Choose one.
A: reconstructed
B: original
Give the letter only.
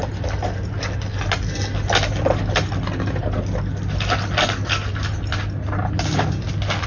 B